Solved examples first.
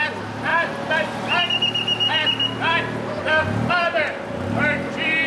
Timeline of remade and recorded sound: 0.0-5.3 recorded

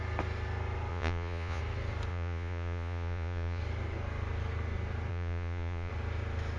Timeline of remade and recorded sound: 0.0-0.9 recorded; 0.9-1.6 remade; 1.6-2.1 recorded; 2.1-3.6 remade; 3.6-5.1 recorded; 5.1-5.9 remade; 5.9-6.6 recorded